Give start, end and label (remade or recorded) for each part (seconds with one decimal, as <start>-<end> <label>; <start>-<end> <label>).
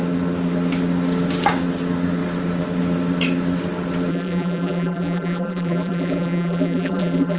0.0-4.1 recorded; 4.1-7.4 remade